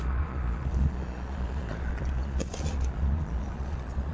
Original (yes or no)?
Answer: no